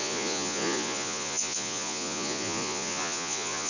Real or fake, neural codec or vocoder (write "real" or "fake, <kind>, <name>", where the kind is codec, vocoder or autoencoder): fake, vocoder, Vocos